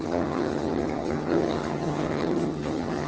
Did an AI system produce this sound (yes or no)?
yes